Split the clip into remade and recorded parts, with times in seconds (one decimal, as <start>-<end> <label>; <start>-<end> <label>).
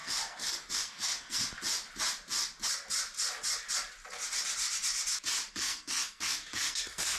0.0-1.4 remade; 1.4-5.5 recorded; 5.5-7.2 remade